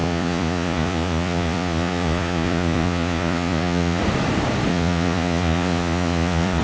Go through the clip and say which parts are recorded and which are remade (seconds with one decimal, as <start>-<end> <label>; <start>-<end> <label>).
0.0-4.0 remade; 4.0-4.7 recorded; 4.7-6.6 remade